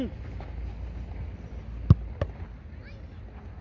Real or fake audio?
real